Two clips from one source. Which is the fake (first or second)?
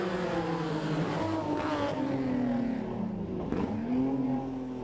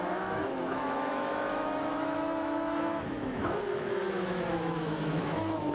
second